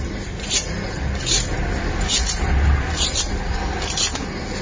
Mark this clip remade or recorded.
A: recorded